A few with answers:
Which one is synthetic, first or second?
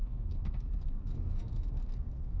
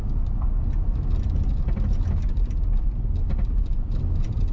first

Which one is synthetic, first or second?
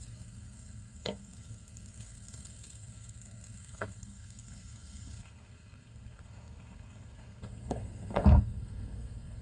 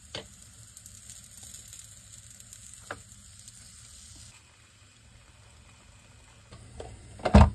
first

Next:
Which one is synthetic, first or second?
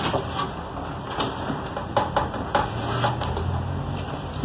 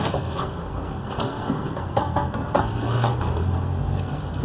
second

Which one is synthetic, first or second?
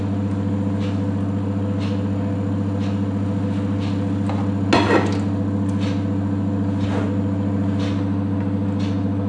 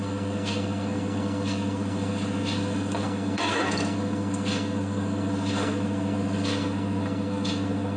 second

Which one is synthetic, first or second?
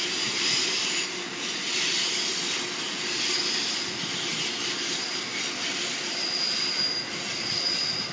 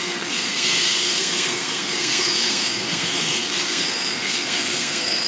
second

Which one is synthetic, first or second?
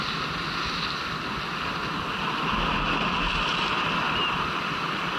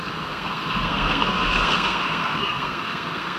second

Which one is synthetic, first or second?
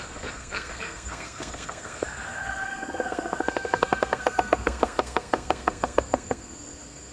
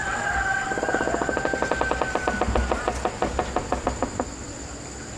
first